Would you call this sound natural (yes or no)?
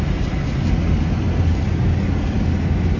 yes